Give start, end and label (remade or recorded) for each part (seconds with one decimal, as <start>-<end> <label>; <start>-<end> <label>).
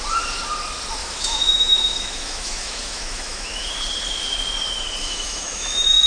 0.0-1.0 recorded; 1.0-3.8 remade; 3.8-5.0 recorded; 5.0-6.1 remade